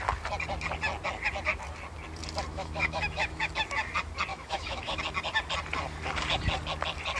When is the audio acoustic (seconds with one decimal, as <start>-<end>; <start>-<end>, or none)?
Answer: 0.0-2.5; 3.5-4.3; 5.0-7.2